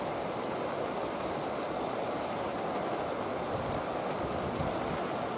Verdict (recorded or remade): recorded